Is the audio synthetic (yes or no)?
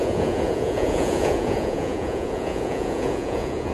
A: yes